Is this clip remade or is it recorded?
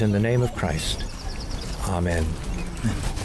recorded